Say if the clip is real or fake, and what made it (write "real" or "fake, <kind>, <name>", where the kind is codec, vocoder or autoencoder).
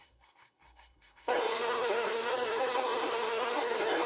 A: fake, codec, SNAC